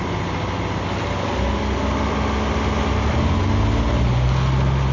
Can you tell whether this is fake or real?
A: real